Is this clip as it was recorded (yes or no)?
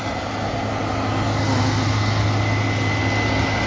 yes